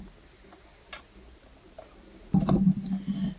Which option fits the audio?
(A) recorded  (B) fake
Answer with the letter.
A